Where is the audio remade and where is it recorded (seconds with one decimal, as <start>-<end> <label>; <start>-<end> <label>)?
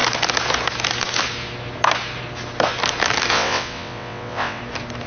0.0-3.3 recorded; 3.3-4.6 remade; 4.6-5.1 recorded